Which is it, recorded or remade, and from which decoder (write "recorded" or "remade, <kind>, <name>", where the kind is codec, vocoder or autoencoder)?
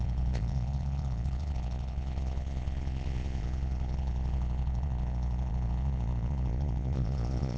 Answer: remade, vocoder, Vocos